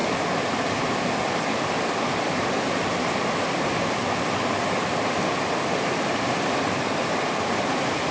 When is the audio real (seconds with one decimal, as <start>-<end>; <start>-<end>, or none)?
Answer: 0.0-8.1

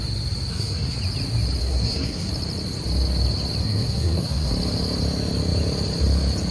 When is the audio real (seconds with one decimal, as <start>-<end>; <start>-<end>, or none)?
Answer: 0.0-0.5; 1.0-1.6; 2.3-3.6; 4.5-6.5

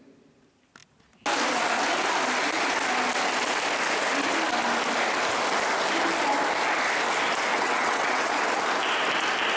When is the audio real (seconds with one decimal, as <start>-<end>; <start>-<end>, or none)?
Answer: 0.0-7.5; 8.4-9.6

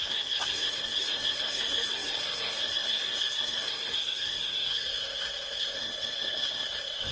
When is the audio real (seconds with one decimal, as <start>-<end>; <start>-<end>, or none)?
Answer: none

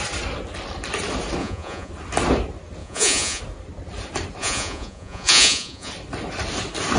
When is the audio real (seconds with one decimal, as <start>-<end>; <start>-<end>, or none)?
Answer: 0.0-1.4; 1.9-2.8; 3.4-4.4; 5.9-7.0

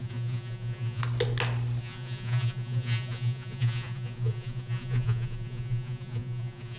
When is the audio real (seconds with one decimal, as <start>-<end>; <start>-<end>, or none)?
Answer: 1.0-1.8